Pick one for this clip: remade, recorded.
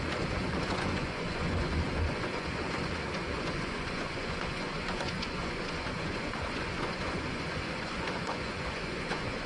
remade